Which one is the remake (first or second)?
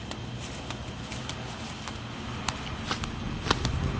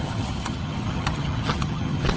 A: second